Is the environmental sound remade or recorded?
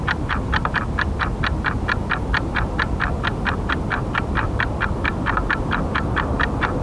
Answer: remade